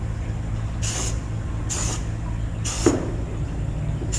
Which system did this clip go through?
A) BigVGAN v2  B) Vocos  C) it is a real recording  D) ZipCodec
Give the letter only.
C